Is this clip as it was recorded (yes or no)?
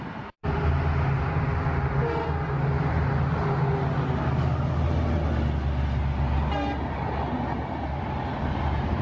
yes